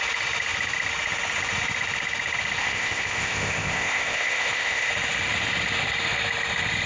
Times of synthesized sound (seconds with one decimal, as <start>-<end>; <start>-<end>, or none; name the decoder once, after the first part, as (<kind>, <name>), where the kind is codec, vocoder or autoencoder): 2.6-4.9 (codec, ZipCodec)